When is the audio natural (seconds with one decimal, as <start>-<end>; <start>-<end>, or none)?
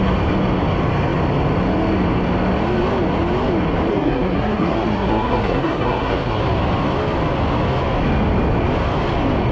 0.0-3.9; 6.4-9.5